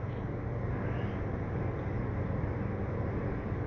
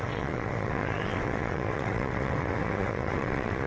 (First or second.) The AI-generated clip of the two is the second